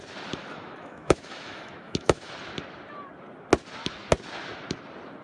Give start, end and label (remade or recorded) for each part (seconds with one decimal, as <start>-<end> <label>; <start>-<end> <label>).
0.0-0.4 recorded; 0.4-2.3 remade; 2.3-5.2 recorded